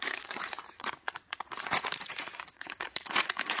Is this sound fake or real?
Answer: fake